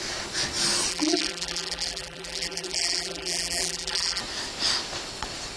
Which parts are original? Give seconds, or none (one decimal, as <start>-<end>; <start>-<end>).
0.0-0.9; 4.2-5.6